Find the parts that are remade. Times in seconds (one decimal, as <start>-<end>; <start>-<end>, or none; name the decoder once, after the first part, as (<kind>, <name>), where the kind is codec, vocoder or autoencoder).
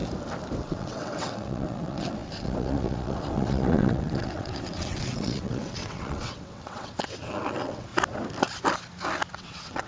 0.6-7.9 (vocoder, WaveNeXt); 9.3-9.9